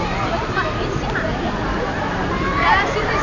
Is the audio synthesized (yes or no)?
yes